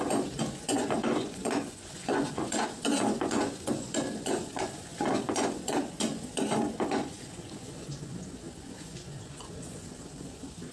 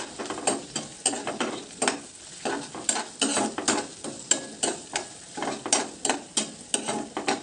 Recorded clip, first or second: second